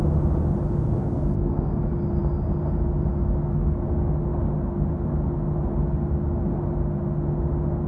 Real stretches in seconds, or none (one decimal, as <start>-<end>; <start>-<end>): 0.0-1.0; 1.7-7.9